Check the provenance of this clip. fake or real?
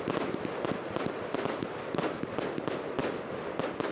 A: real